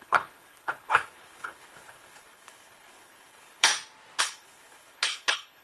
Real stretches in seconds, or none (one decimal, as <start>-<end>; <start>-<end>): 3.7-4.2